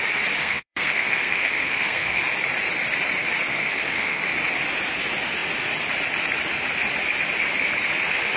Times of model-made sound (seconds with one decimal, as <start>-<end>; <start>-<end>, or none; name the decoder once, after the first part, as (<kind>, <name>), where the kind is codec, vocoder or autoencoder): 0.4-2.2 (codec, SNAC); 3.5-4.2